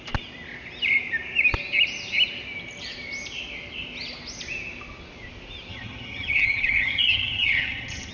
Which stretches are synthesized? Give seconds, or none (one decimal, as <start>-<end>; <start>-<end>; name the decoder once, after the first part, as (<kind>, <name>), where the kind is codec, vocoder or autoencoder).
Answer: 5.7-8.1 (vocoder, HiFi-GAN)